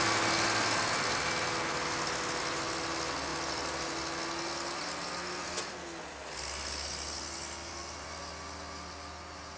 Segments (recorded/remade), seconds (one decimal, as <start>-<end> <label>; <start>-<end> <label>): 0.0-9.6 recorded